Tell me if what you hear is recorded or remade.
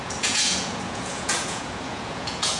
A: remade